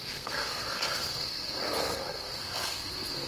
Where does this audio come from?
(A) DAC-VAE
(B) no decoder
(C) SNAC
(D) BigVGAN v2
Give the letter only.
C